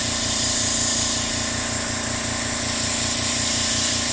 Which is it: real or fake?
fake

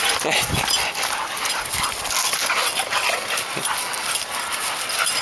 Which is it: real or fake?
real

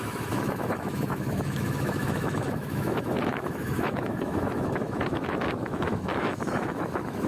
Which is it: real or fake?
fake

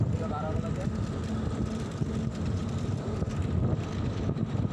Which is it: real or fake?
fake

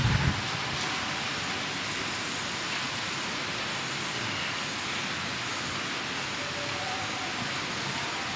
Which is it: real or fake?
real